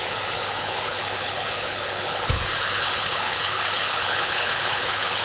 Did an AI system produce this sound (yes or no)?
yes